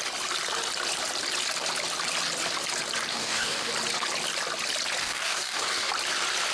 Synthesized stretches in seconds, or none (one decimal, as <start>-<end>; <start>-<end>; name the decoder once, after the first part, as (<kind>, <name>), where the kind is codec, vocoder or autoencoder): 3.1-3.7 (codec, DAC); 5.0-5.9

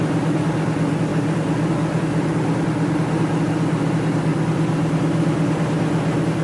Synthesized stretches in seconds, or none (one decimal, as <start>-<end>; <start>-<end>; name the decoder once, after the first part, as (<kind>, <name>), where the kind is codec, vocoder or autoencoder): none

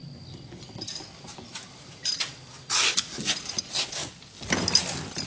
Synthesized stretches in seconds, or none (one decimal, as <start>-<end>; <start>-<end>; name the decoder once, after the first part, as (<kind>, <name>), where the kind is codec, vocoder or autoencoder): none

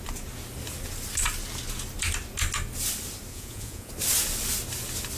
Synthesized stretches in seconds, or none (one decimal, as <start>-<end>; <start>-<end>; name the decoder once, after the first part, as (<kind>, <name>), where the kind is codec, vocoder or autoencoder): 3.3-3.9 (vocoder, Vocos)

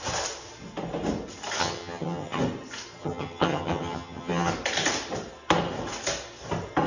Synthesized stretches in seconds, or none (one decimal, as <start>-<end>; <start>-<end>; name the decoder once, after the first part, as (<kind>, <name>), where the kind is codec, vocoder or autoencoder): 1.6-2.4 (vocoder, HiFi-GAN); 3.0-4.5

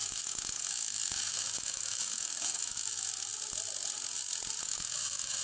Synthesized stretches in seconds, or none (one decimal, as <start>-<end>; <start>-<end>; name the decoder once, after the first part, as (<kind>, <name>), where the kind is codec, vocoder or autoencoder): 0.0-3.1 (autoencoder, DAC-VAE); 4.6-5.4